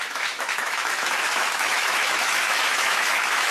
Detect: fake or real fake